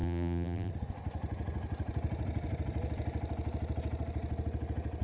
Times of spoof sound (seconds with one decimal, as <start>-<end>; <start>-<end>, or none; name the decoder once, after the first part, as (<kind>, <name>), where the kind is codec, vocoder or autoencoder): 0.0-0.7 (vocoder, BigVGAN v2)